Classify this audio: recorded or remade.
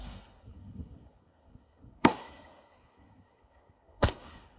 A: remade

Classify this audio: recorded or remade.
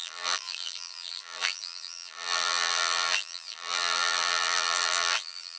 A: remade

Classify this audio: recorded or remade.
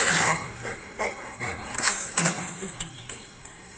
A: remade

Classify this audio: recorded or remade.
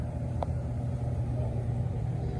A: remade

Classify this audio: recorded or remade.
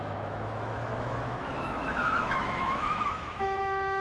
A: remade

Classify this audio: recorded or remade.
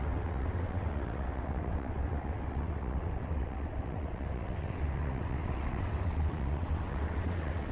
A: remade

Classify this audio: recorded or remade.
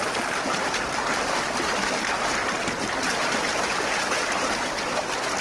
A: recorded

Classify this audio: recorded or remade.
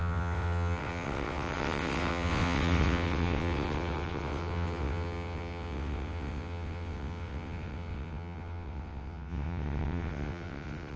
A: remade